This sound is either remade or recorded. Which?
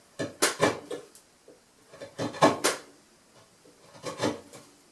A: recorded